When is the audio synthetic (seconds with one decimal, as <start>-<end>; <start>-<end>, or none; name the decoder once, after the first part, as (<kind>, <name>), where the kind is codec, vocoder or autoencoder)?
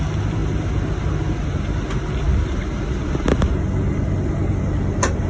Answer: none